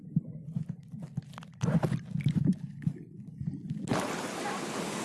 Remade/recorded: recorded